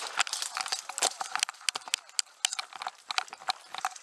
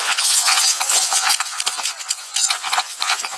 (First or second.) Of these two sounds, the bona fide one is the first